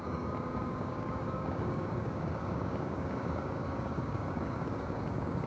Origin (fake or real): fake